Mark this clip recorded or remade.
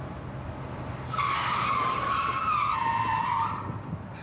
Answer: recorded